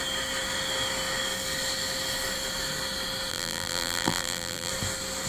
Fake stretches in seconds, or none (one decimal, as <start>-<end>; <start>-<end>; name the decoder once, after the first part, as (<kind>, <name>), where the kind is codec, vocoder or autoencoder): 3.3-4.7 (vocoder, BigVGAN v2)